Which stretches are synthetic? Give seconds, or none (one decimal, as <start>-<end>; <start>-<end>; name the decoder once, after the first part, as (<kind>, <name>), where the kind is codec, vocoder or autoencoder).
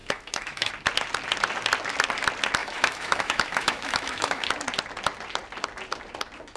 0.0-0.7 (autoencoder, DAC-VAE); 2.6-4.5